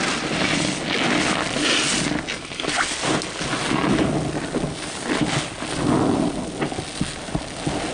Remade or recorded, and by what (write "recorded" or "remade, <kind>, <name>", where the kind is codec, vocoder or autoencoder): recorded